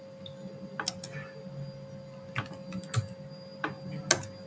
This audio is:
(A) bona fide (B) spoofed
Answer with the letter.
A